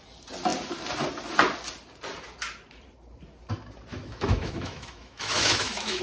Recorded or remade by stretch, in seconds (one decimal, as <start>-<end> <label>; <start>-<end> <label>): 0.0-3.9 recorded; 3.9-6.0 remade